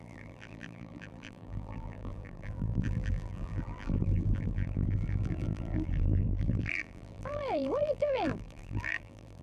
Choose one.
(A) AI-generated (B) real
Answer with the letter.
A